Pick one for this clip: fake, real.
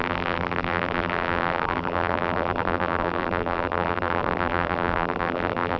fake